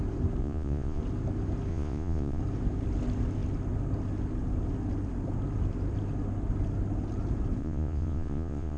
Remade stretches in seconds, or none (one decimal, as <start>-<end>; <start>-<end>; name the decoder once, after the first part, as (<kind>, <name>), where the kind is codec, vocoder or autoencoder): 0.4-1.0 (vocoder, Vocos); 1.7-2.4; 7.6-8.8